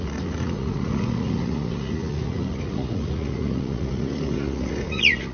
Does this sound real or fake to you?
fake